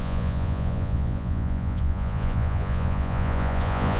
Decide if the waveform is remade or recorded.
remade